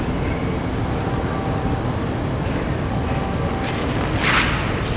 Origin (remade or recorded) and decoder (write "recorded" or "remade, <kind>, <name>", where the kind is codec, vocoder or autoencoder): recorded